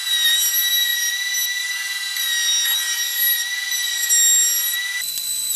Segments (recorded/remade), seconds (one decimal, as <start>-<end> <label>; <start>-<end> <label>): 0.0-5.6 recorded